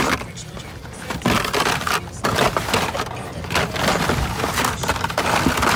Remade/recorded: recorded